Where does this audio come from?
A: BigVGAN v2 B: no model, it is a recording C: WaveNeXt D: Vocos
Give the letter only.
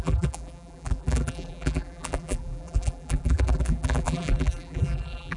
A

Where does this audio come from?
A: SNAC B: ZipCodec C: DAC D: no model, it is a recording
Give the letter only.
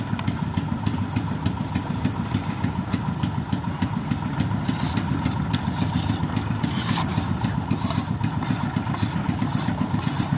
D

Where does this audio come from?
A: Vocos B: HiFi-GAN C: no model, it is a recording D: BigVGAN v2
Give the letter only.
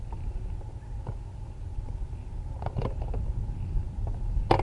C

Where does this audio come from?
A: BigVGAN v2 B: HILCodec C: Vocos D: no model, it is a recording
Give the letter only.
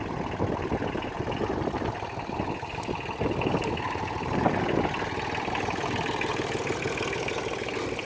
D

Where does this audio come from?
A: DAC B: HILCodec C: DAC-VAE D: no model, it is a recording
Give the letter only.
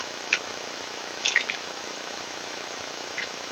C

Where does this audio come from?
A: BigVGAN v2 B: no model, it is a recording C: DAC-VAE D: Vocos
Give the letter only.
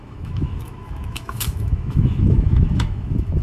C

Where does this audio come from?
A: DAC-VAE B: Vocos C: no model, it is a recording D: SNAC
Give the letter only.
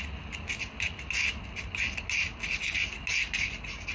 C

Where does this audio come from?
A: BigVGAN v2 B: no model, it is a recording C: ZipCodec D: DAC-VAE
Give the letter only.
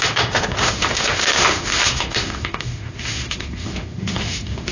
D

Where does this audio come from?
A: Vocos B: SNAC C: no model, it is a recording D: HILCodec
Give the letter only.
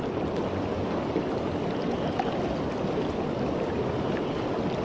C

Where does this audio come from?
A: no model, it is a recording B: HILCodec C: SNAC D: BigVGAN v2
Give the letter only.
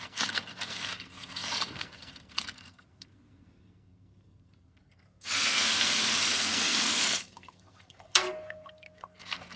C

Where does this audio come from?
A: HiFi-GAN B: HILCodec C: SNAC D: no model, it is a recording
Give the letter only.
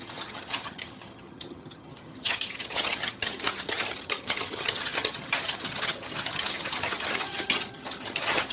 A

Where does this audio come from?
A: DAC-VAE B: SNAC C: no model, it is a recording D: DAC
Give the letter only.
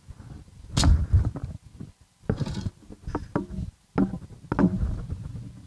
C